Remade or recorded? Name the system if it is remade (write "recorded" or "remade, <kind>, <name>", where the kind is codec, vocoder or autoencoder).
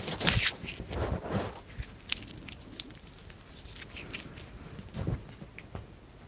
recorded